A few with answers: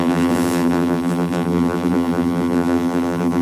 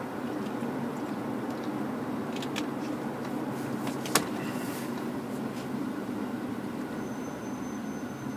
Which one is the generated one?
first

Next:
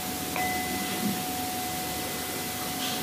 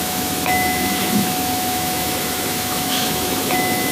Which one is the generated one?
second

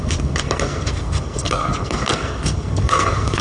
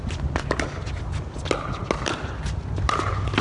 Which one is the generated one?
first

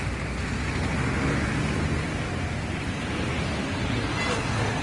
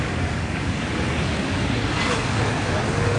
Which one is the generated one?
second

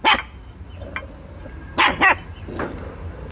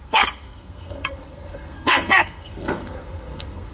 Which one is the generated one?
second